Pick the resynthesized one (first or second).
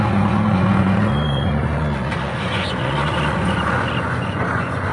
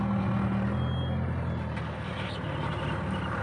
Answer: first